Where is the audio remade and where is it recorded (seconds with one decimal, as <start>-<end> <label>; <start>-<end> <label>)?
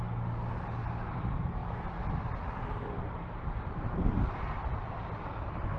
0.0-5.8 recorded